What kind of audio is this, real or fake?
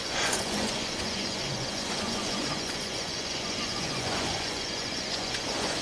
fake